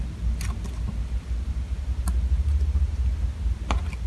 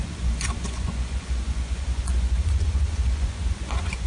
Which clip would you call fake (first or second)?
second